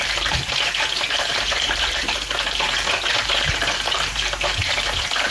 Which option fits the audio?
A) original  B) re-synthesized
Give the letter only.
B